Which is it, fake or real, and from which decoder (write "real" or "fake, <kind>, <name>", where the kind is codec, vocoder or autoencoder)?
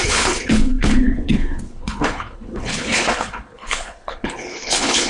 fake, codec, HILCodec